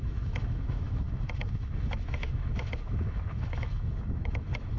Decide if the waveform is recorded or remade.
remade